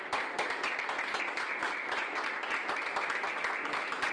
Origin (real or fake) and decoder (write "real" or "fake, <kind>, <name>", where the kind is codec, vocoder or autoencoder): real